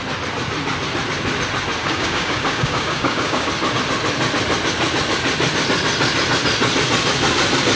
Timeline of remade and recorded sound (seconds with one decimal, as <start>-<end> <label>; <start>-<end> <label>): 0.0-1.8 recorded; 1.8-3.5 remade; 3.5-7.8 recorded